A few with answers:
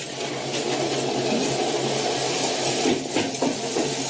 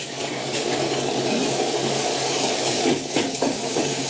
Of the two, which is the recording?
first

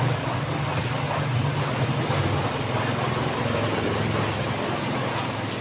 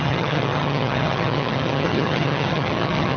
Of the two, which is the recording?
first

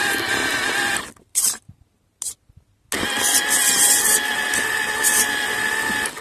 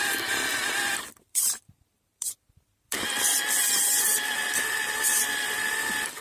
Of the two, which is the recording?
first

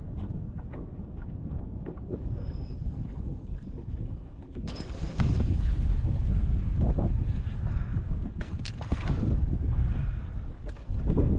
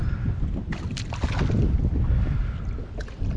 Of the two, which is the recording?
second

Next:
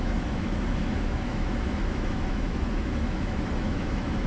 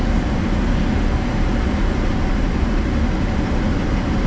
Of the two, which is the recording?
second